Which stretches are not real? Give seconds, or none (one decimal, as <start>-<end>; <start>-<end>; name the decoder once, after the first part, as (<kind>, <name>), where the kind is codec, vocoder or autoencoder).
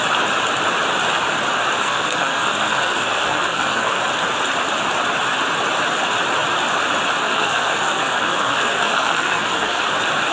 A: 1.8-4.0 (codec, SNAC); 7.2-9.8